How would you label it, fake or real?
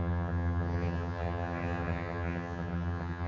fake